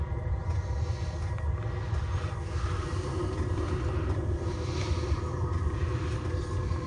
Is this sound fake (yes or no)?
no